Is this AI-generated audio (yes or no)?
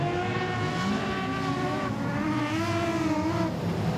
no